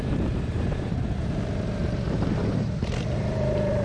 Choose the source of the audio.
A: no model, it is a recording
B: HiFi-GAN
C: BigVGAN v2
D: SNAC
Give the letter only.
C